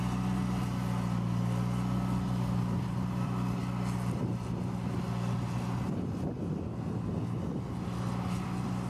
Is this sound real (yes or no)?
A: yes